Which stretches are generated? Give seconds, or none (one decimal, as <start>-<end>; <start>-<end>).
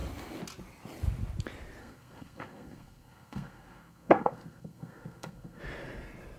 1.8-5.6